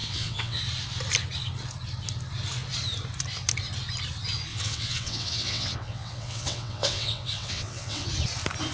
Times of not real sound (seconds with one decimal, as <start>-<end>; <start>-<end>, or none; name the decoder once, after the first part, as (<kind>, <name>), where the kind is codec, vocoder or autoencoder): 0.0-0.6 (vocoder, WaveNeXt); 4.5-8.1